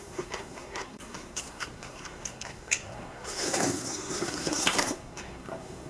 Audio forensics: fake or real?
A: fake